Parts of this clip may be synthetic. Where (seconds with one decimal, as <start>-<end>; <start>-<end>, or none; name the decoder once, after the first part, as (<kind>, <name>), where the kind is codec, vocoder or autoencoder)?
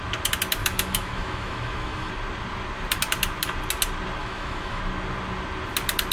0.6-2.1 (autoencoder, DAC-VAE); 4.2-4.8